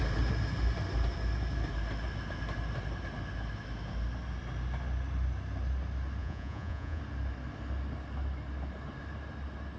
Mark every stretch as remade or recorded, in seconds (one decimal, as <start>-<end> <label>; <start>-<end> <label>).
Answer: 0.0-6.2 recorded; 6.2-7.0 remade; 7.0-9.8 recorded